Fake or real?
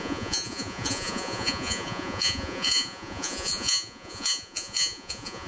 fake